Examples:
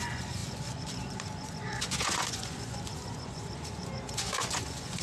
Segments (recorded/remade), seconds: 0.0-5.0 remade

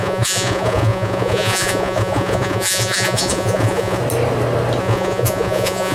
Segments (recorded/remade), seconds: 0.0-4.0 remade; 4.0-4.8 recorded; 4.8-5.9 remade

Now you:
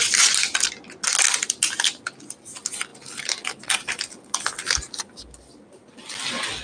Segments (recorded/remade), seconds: 0.0-6.6 recorded